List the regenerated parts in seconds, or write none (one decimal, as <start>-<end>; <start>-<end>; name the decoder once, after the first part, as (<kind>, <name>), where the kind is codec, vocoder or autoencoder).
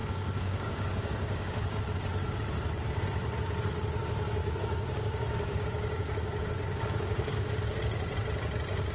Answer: 0.0-1.8 (codec, DAC); 4.4-7.8